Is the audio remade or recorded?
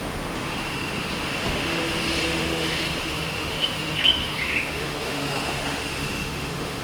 remade